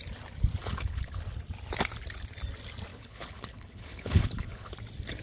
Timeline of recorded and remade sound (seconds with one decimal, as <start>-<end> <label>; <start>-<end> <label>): 0.0-0.6 recorded; 0.6-1.2 remade; 1.2-2.9 recorded; 2.9-4.7 remade; 4.7-5.2 recorded